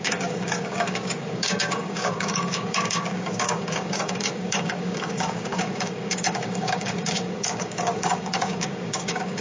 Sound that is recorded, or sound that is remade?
remade